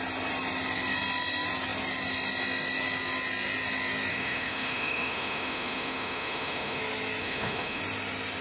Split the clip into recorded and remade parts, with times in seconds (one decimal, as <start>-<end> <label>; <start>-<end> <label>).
0.0-4.1 recorded; 4.1-6.8 remade; 6.8-7.2 recorded; 7.2-7.8 remade; 7.8-8.4 recorded